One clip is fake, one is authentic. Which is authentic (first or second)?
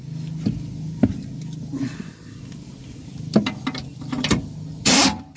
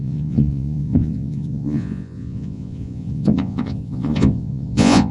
first